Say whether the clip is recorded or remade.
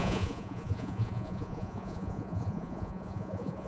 remade